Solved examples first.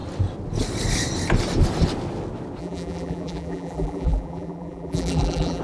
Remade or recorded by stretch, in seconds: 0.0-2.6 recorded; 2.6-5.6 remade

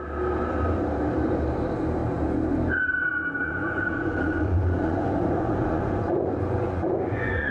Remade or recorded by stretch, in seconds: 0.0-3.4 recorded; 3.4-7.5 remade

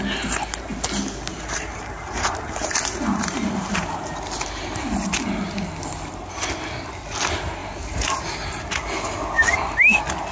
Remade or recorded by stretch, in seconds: 0.0-1.3 recorded; 1.3-3.7 remade; 3.7-7.6 recorded; 7.6-8.2 remade; 8.2-10.3 recorded